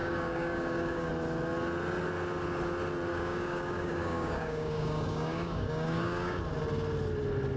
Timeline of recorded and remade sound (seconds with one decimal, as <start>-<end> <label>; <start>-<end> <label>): 0.0-1.1 remade; 1.1-3.1 recorded; 3.1-6.4 remade; 6.4-7.6 recorded